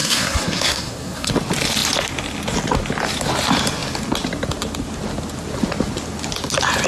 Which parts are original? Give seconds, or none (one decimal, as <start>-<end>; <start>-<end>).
1.3-6.9